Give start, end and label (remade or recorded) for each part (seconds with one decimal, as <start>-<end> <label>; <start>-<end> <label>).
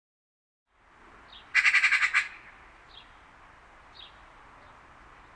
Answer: 0.0-5.4 recorded